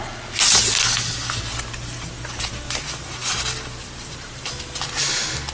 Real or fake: real